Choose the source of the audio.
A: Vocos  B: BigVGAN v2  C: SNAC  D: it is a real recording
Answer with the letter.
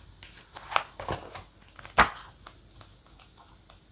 D